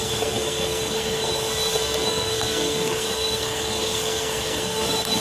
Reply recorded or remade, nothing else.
remade